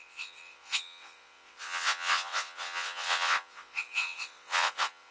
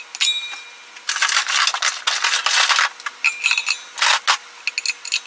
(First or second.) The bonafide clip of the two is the second